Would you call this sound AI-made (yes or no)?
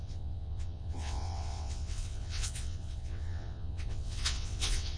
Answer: yes